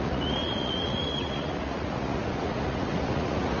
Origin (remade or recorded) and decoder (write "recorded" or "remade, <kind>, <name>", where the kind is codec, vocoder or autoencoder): remade, vocoder, Vocos